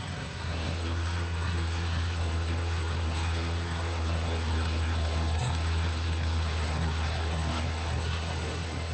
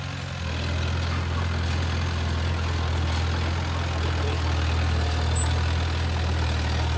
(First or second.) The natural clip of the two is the second